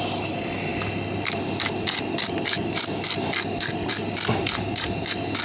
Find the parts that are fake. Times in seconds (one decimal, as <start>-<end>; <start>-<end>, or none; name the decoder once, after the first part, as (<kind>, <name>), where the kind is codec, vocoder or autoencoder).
none